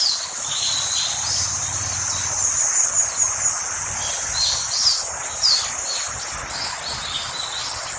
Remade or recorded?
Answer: recorded